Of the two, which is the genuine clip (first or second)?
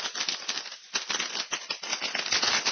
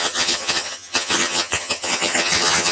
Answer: first